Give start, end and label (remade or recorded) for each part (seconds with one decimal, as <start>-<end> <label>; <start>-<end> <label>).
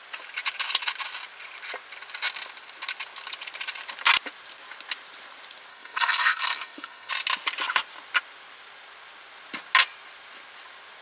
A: 0.0-5.7 recorded; 5.7-7.1 remade; 7.1-11.0 recorded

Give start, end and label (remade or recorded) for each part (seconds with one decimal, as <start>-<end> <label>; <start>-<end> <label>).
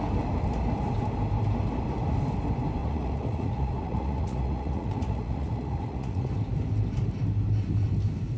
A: 0.0-2.8 recorded; 2.8-6.3 remade; 6.3-8.4 recorded